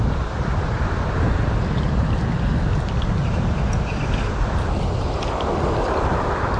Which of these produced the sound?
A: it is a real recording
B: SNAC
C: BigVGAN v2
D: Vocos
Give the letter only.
C